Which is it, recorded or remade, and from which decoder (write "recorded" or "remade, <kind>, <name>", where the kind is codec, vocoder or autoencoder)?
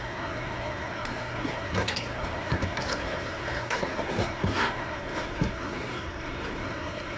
remade, codec, SNAC